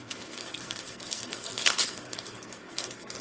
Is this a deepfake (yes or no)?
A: yes